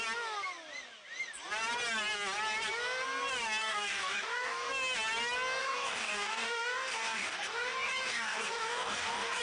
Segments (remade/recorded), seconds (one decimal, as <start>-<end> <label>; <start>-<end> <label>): 0.0-3.6 recorded; 3.6-4.7 remade; 4.7-5.6 recorded; 5.6-9.4 remade